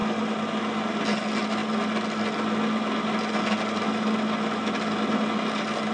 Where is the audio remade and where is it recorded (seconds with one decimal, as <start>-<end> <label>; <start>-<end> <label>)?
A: 0.0-5.9 recorded

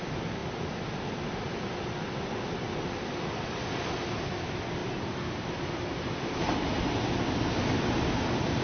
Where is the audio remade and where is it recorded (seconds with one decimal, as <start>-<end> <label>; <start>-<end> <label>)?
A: 0.0-8.6 recorded

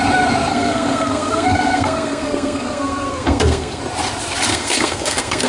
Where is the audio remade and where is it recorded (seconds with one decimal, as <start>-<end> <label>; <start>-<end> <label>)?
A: 0.0-0.5 recorded; 0.5-3.8 remade; 3.8-4.5 recorded; 4.5-5.5 remade